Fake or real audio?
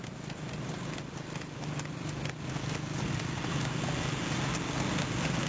real